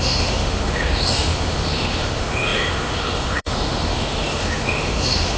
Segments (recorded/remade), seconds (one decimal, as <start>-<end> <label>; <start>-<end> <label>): 0.0-5.4 remade